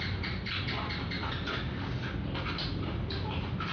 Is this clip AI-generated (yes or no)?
no